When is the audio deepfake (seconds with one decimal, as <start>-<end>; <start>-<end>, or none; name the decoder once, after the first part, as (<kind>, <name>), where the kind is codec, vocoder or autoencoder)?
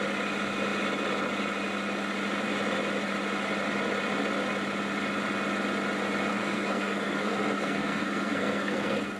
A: 6.3-9.2 (codec, SNAC)